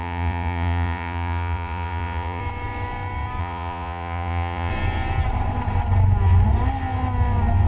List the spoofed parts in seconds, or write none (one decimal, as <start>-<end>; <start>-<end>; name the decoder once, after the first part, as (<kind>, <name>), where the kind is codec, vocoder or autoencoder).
0.0-2.4 (vocoder, Vocos); 3.4-4.7